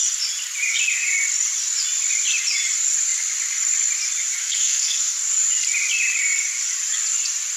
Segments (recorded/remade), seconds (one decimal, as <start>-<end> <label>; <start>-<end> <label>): 0.0-4.4 recorded; 4.4-5.1 remade; 5.1-7.6 recorded